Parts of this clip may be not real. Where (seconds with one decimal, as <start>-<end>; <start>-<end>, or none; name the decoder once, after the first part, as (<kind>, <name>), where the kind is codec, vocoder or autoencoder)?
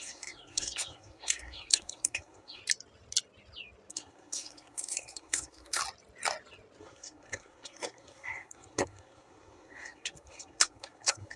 0.0-2.6 (codec, SNAC); 3.9-5.8; 6.8-11.4